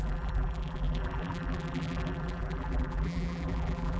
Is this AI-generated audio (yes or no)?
yes